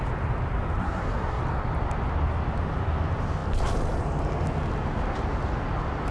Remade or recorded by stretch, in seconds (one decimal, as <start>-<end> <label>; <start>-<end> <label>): 0.0-0.8 recorded; 0.8-1.4 remade; 1.4-6.1 recorded

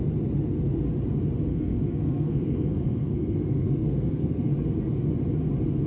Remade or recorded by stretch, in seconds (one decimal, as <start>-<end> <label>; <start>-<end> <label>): 0.0-1.5 recorded; 1.5-4.5 remade; 4.5-5.9 recorded

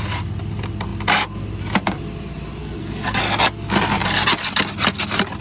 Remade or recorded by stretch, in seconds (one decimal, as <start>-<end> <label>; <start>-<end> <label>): 0.0-2.6 recorded; 2.6-3.2 remade; 3.2-5.4 recorded

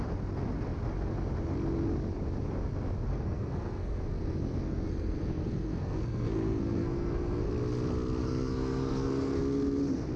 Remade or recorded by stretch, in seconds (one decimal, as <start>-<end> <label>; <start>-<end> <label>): 0.0-3.1 recorded; 3.1-7.5 remade; 7.5-8.2 recorded; 8.2-9.4 remade; 9.4-10.2 recorded

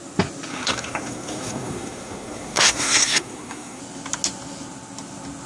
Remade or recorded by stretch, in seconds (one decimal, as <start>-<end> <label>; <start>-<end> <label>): 0.0-0.5 recorded; 0.5-3.8 remade; 3.8-5.5 recorded

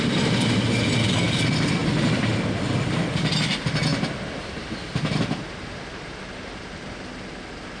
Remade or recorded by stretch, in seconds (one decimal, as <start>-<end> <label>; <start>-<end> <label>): 0.0-7.8 recorded